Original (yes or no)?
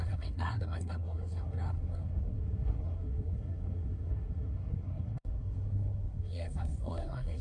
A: no